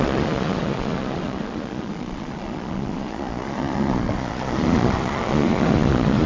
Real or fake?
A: fake